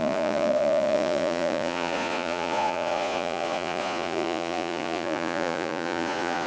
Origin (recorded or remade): remade